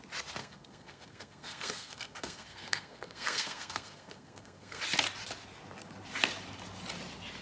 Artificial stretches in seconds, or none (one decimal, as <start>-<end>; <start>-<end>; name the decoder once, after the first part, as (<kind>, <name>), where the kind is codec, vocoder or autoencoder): 0.4-4.8 (codec, SNAC)